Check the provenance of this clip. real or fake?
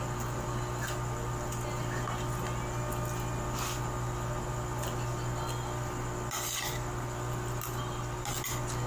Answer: real